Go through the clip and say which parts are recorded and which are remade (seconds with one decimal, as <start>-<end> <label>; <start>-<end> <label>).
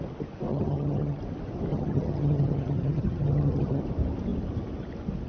0.0-0.5 recorded; 0.5-1.2 remade; 1.2-1.7 recorded; 1.7-3.8 remade; 3.8-5.3 recorded